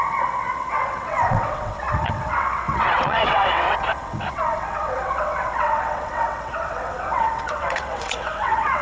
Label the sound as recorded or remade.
remade